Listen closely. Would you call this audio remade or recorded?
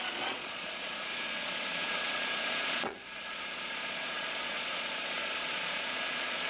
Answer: remade